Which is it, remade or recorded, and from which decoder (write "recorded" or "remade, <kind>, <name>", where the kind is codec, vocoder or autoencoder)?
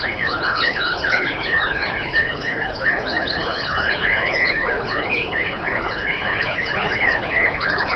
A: remade, codec, HILCodec